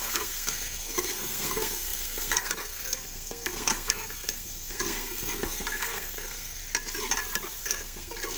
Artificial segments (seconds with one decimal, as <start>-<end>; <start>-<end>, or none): 0.0-6.6; 7.6-8.4